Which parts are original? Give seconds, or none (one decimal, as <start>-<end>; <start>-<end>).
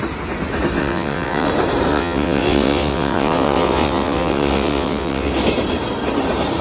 0.0-0.8; 1.5-1.9; 5.3-6.6